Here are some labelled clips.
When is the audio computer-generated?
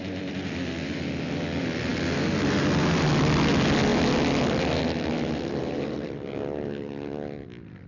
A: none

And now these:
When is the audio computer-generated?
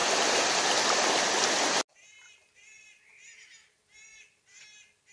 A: none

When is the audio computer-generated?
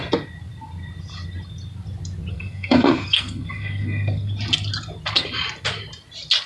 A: 2.3-4.3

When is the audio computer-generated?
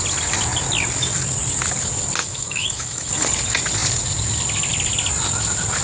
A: 2.2-3.1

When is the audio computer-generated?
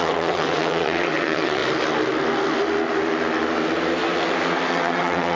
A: 0.0-1.6; 4.7-5.3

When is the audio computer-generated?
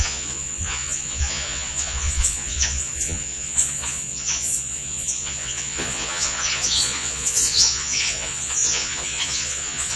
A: 0.0-10.0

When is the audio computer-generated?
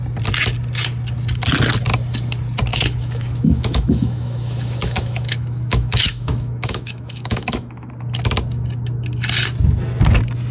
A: 2.7-7.9